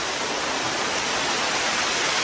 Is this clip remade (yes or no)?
no